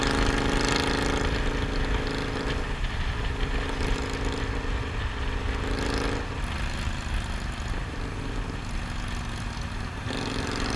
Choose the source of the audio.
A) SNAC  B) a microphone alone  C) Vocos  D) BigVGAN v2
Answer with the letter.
B